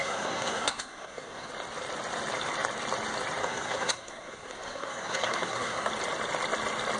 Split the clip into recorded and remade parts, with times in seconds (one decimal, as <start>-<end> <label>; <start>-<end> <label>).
0.0-1.5 remade; 1.5-3.4 recorded; 3.4-5.9 remade; 5.9-7.0 recorded